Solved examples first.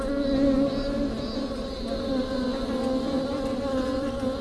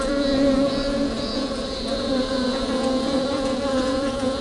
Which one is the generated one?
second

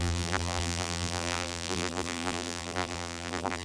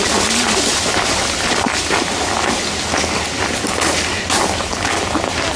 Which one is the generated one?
first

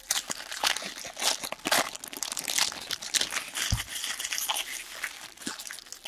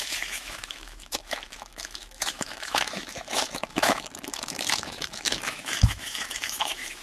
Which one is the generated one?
second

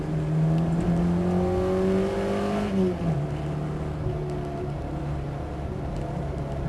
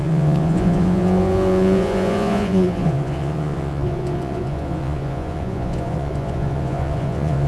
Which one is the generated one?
second